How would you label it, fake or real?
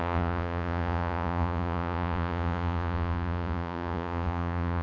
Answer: fake